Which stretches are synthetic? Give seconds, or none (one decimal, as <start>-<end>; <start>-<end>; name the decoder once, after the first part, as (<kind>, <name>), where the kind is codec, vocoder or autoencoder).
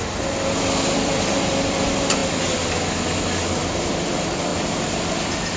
0.0-2.2 (vocoder, BigVGAN v2); 3.8-4.5